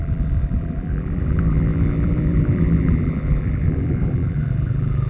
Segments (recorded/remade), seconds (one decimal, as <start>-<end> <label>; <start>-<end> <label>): 0.0-5.1 remade